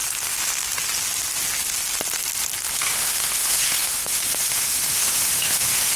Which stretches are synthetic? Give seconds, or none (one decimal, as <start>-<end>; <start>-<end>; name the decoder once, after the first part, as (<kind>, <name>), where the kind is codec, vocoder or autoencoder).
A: 2.7-6.0 (autoencoder, DAC-VAE)